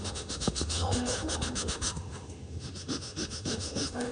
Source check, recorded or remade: remade